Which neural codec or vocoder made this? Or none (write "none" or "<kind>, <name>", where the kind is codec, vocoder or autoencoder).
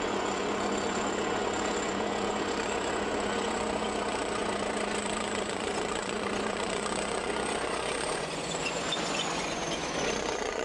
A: vocoder, Vocos